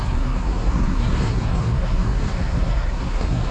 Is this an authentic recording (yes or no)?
no